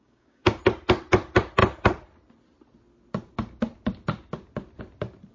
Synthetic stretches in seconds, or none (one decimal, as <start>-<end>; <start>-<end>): 0.0-0.6